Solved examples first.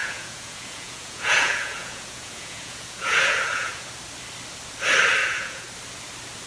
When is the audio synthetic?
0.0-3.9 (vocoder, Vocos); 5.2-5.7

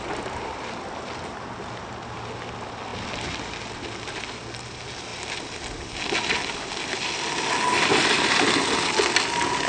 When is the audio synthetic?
none

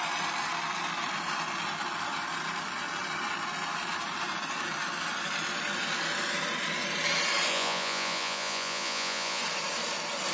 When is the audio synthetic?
7.5-9.4 (vocoder, Vocos)

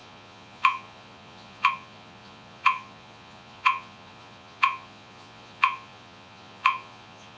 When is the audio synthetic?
0.0-7.4 (vocoder, Vocos)

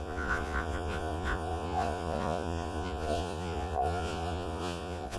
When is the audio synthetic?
0.0-5.2 (vocoder, Vocos)

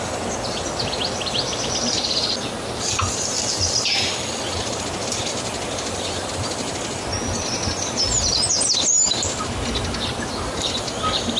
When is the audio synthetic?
none